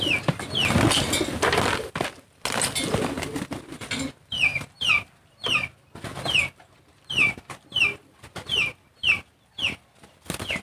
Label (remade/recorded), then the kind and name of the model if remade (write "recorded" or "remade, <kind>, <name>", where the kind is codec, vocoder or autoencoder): recorded